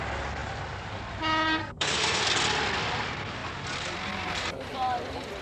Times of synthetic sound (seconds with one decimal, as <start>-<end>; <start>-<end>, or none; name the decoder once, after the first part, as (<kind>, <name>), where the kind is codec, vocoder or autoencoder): 1.6-2.2 (codec, SNAC)